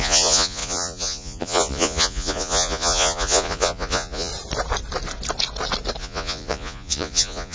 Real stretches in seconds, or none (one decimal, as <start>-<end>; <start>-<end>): 4.3-6.0

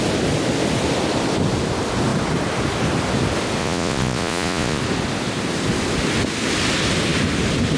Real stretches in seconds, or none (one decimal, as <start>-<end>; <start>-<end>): 0.0-3.6; 4.8-7.8

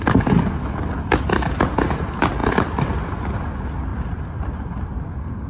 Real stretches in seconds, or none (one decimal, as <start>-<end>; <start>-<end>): 0.0-5.5

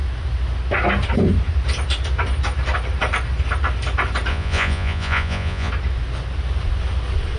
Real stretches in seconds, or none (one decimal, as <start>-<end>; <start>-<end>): 0.0-4.3; 5.7-7.4

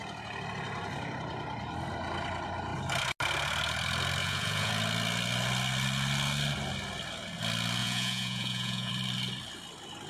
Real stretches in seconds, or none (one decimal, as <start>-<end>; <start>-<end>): 0.0-4.2; 4.7-7.8; 8.9-10.1